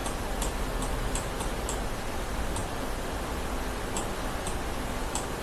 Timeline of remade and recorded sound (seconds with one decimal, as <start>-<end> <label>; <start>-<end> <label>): 0.0-5.4 recorded